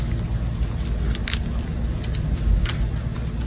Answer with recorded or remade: recorded